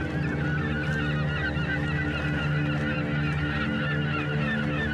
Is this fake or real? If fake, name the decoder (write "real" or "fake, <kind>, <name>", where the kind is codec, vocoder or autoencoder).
real